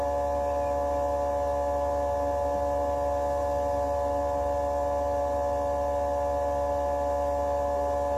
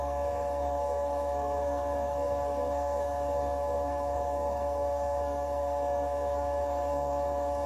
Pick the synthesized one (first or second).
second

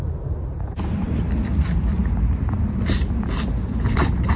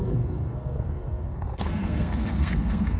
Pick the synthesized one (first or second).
second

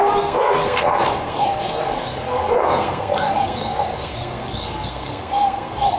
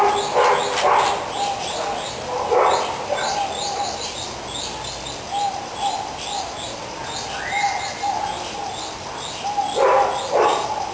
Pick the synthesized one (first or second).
first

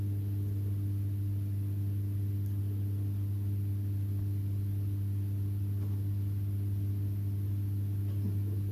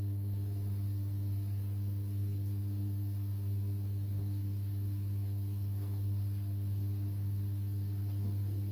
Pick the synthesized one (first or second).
second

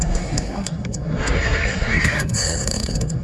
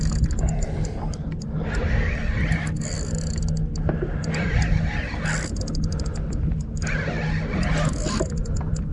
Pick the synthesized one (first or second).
first